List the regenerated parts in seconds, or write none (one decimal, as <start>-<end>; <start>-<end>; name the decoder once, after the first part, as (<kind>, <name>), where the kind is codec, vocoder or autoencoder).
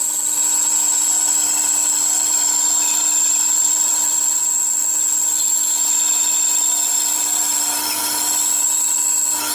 3.6-4.4 (vocoder, BigVGAN v2); 6.9-8.0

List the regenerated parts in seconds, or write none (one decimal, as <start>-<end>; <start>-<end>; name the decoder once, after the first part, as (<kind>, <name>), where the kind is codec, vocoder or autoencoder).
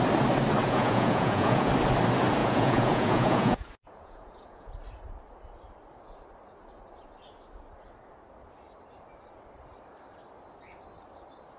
0.6-1.7 (vocoder, Vocos); 2.4-4.7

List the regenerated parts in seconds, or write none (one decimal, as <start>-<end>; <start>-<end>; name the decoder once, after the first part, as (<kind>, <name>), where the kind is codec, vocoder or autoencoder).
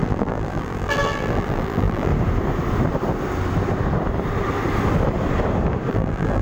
0.0-2.1 (vocoder, BigVGAN v2); 5.9-6.4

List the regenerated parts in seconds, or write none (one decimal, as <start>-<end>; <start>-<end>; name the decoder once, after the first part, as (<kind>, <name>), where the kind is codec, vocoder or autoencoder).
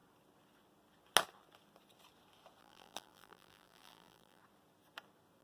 2.6-4.4 (vocoder, BigVGAN v2)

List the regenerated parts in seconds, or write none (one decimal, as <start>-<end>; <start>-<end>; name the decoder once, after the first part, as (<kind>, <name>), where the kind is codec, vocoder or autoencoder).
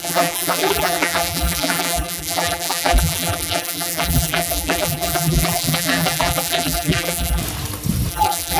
0.0-7.4 (vocoder, BigVGAN v2); 8.1-8.6